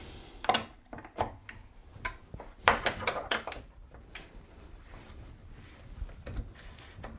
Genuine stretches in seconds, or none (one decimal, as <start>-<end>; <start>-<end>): 0.0-1.8; 6.0-7.2